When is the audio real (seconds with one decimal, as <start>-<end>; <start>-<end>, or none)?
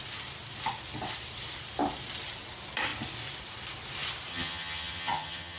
0.0-4.3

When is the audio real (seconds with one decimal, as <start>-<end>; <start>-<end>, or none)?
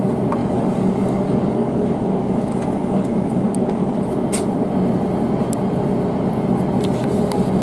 0.0-0.4; 4.0-7.6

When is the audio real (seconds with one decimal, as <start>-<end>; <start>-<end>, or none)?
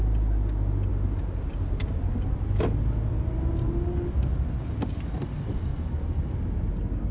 0.0-5.7; 6.3-7.1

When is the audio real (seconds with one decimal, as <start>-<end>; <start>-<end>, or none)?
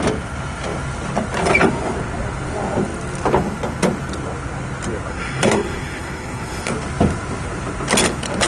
0.0-5.1; 6.7-8.5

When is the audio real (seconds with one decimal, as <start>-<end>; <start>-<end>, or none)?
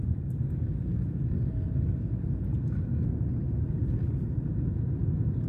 0.0-3.8; 5.0-5.5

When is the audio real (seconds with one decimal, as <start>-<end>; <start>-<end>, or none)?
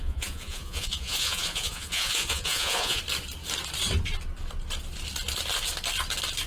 3.0-6.5